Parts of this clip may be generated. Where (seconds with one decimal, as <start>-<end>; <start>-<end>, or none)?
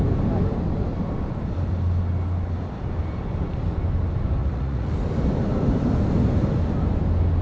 4.4-4.9